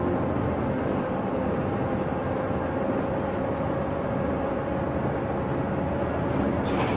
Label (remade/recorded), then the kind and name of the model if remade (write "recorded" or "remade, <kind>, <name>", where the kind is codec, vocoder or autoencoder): recorded